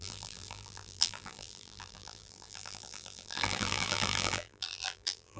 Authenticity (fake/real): fake